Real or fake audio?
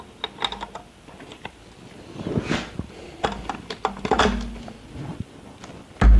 real